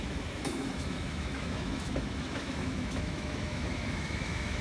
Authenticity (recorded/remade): remade